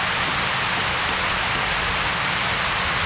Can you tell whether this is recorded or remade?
recorded